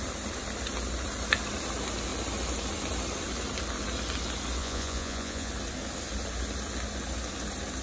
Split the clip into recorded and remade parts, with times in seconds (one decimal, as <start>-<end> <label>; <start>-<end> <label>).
0.0-4.6 recorded; 4.6-5.5 remade; 5.5-7.8 recorded